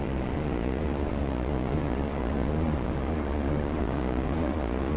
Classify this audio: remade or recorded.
remade